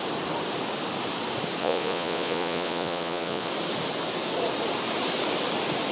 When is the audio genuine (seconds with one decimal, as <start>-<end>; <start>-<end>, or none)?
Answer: 0.0-1.6; 3.5-5.9